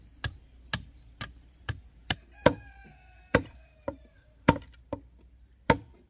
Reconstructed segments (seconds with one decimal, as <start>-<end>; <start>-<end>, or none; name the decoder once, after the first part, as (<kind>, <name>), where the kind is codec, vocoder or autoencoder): 2.8-4.6 (vocoder, BigVGAN v2)